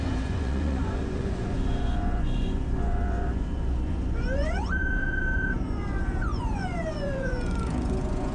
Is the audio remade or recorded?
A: remade